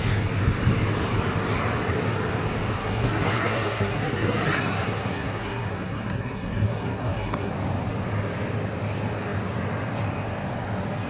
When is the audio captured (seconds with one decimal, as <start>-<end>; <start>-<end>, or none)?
0.0-2.8; 7.5-11.1